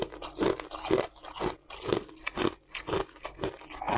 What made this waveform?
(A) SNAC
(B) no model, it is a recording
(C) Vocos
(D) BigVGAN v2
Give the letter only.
B